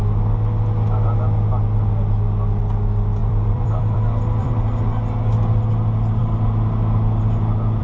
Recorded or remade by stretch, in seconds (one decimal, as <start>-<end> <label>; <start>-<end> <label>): 0.0-3.2 recorded; 3.2-4.5 remade; 4.5-7.8 recorded